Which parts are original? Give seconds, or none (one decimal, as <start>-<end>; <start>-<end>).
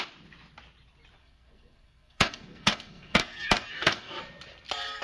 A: 0.0-1.2; 4.2-5.0